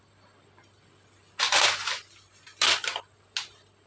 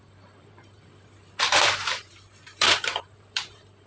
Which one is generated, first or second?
second